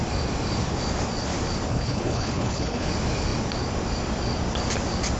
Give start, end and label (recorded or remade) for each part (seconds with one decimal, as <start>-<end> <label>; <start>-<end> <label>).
0.0-1.7 recorded; 1.7-2.9 remade; 2.9-5.2 recorded